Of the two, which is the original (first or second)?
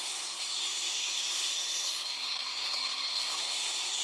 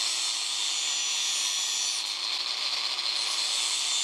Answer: second